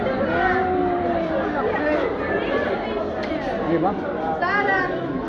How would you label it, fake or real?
real